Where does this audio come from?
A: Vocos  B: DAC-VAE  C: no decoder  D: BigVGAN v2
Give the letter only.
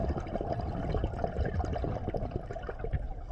D